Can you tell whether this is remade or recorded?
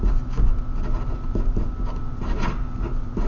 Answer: recorded